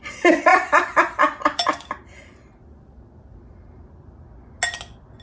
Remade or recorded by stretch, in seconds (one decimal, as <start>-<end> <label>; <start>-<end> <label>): 0.0-0.5 recorded; 0.5-2.7 remade; 2.7-5.2 recorded